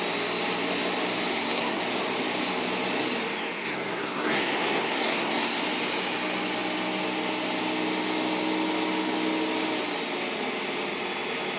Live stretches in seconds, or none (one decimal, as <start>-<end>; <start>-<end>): 0.0-1.3; 1.8-3.4; 5.6-11.6